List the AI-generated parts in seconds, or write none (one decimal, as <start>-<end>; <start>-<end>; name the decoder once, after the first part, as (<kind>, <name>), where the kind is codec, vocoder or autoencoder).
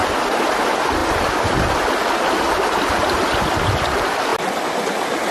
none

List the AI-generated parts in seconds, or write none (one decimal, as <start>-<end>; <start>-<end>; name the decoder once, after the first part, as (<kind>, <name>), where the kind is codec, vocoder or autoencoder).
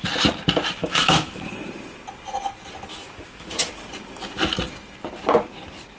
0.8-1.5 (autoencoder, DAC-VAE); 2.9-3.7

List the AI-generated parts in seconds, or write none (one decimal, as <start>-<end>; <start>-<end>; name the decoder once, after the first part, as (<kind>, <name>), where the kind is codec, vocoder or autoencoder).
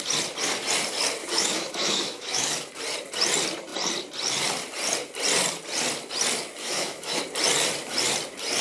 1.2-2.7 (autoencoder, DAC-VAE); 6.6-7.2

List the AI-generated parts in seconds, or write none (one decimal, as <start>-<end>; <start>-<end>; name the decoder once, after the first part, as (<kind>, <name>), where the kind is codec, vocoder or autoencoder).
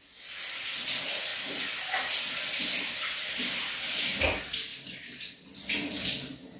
none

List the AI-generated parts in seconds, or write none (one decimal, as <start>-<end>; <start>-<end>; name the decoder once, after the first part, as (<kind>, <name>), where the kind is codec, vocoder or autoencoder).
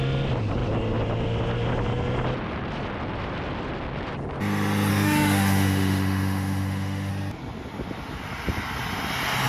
4.9-7.1 (autoencoder, DAC-VAE)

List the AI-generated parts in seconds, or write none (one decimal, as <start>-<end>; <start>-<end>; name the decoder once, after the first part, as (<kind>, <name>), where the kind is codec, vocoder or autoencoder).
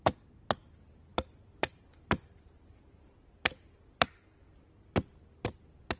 none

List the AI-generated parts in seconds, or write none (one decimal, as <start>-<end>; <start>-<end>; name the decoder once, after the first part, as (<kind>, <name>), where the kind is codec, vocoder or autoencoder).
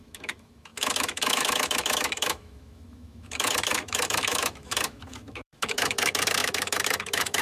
0.0-7.4 (autoencoder, DAC-VAE)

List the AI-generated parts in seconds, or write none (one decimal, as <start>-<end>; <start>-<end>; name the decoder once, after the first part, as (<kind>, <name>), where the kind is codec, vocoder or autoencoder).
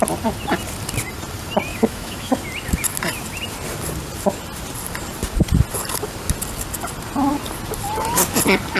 1.7-2.3 (autoencoder, DAC-VAE)